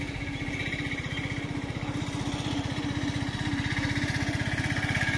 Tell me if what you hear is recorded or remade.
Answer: recorded